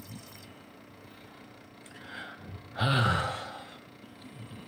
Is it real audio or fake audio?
fake